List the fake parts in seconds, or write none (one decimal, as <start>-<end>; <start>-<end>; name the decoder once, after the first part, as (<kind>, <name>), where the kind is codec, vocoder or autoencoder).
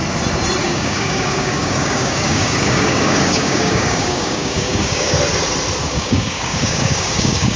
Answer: 0.6-5.2 (codec, DAC); 5.8-7.6